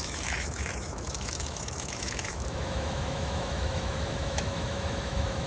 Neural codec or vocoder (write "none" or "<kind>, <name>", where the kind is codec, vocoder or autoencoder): autoencoder, DAC-VAE